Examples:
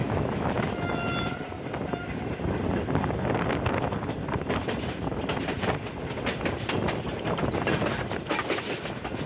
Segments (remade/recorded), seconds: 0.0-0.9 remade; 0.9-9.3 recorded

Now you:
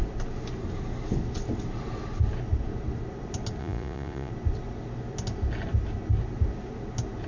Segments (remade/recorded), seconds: 0.0-3.6 recorded; 3.6-4.3 remade; 4.3-7.3 recorded

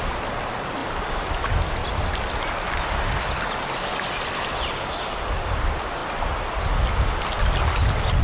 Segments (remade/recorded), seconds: 0.0-8.2 recorded

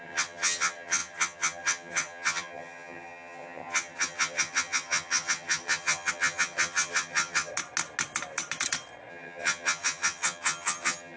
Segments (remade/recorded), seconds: 0.0-7.5 remade; 7.5-9.1 recorded; 9.1-11.2 remade

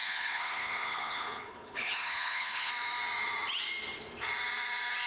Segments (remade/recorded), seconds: 0.0-2.7 remade; 2.7-5.1 recorded

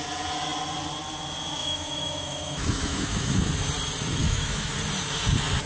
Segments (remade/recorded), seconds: 0.0-1.6 recorded; 1.6-3.5 remade; 3.5-4.2 recorded; 4.2-4.7 remade; 4.7-5.7 recorded